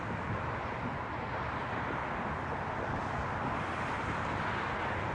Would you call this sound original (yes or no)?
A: yes